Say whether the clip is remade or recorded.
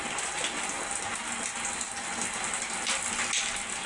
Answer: recorded